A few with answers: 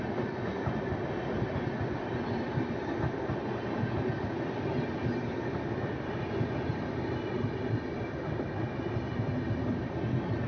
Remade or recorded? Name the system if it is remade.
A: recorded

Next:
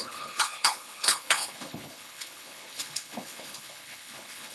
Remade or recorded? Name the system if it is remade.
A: remade, codec, HILCodec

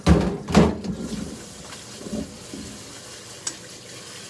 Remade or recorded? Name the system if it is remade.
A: recorded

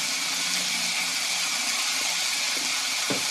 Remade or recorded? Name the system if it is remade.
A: recorded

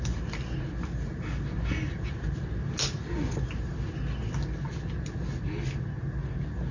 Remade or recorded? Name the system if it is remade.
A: recorded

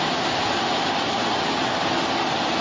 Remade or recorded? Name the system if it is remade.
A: recorded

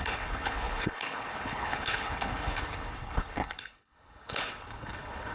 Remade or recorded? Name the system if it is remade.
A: remade, codec, HILCodec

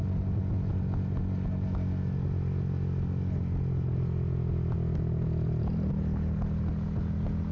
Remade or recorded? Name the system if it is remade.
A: recorded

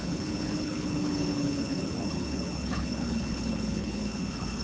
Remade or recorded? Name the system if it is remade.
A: remade, codec, HILCodec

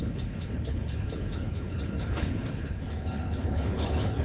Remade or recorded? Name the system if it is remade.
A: remade, codec, HILCodec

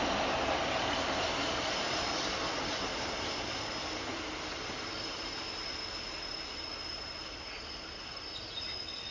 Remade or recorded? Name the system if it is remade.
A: recorded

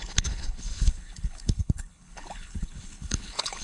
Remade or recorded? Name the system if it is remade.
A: remade, codec, HILCodec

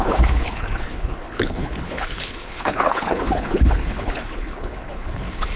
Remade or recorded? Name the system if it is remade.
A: remade, codec, HILCodec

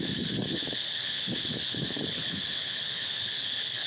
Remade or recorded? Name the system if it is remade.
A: remade, codec, HILCodec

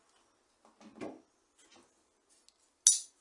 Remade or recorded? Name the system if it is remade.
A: recorded